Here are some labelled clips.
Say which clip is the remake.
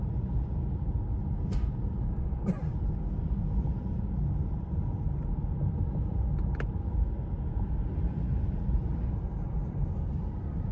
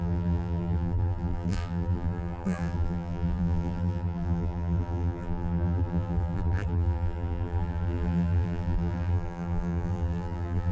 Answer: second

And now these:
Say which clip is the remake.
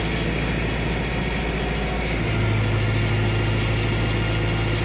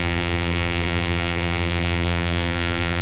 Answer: second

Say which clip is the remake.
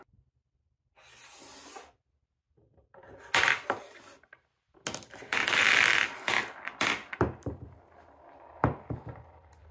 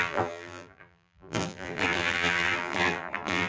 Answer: second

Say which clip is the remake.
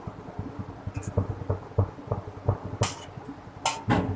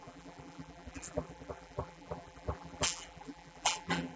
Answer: second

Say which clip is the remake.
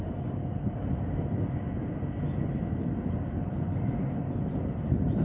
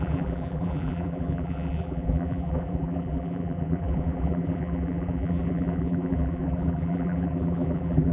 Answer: second